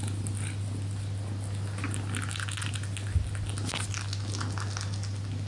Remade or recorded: recorded